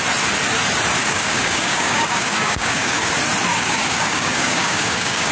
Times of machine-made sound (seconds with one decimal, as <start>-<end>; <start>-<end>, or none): 1.0-3.1; 3.5-5.3